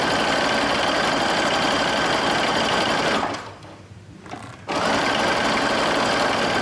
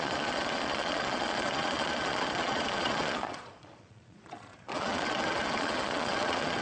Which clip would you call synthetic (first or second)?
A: second